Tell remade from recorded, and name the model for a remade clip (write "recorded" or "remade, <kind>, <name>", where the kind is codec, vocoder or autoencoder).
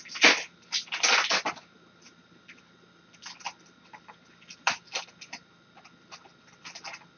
recorded